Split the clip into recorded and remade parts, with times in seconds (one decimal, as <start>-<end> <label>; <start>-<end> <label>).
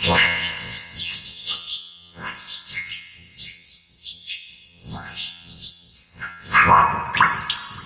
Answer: 0.0-6.8 remade; 6.8-7.9 recorded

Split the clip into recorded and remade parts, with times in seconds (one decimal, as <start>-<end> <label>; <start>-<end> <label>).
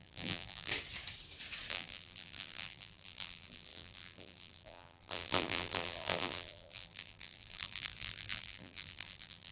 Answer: 0.0-0.7 remade; 0.7-1.7 recorded; 1.7-9.5 remade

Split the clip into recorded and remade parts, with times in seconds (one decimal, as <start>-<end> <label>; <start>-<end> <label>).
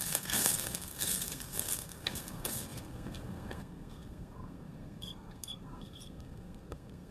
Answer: 0.0-7.1 remade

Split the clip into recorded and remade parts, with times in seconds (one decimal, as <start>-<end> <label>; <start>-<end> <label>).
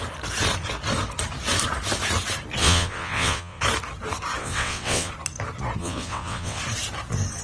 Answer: 0.0-2.6 recorded; 2.6-3.6 remade; 3.6-4.4 recorded; 4.4-5.1 remade; 5.1-5.8 recorded; 5.8-6.6 remade; 6.6-7.4 recorded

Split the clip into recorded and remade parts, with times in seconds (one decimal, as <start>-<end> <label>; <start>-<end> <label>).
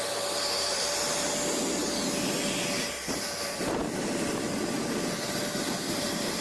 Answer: 0.0-0.8 remade; 0.8-2.9 recorded; 2.9-6.4 remade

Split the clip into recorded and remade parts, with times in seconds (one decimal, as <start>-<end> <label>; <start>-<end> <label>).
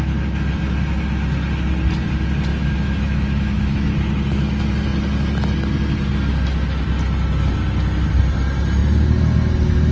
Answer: 0.0-2.5 recorded; 2.5-3.9 remade; 3.9-9.9 recorded